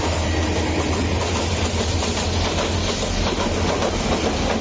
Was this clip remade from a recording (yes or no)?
no